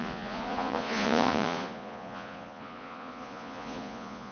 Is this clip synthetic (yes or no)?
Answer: yes